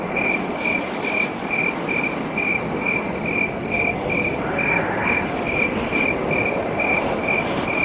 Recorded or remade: recorded